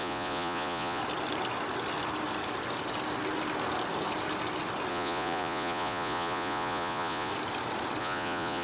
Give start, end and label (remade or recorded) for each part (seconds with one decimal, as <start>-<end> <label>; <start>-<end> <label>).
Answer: 0.0-1.0 remade; 1.0-4.9 recorded; 4.9-7.3 remade; 7.3-8.0 recorded; 8.0-8.6 remade